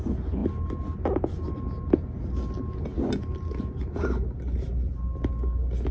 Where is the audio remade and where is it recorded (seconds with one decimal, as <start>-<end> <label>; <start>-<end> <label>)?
0.0-5.9 recorded